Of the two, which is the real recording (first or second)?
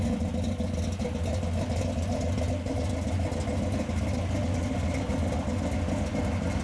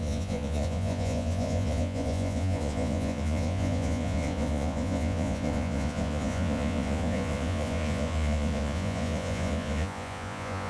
first